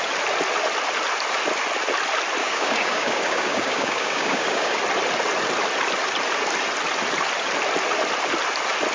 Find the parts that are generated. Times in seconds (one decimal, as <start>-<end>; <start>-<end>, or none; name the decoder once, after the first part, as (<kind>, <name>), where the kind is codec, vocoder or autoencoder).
2.4-4.8 (codec, DAC)